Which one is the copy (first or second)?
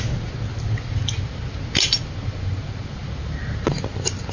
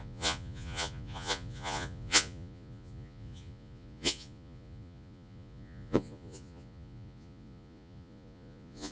second